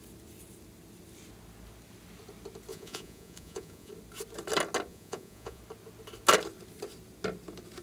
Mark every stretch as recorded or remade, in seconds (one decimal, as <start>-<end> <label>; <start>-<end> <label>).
0.0-2.7 recorded; 2.7-3.9 remade; 3.9-4.9 recorded; 4.9-5.6 remade; 5.6-7.8 recorded